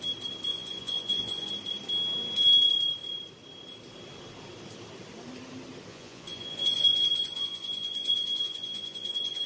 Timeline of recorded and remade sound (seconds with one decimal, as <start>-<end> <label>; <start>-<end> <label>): 0.0-0.5 recorded; 0.5-1.5 remade; 1.5-5.9 recorded; 5.9-9.5 remade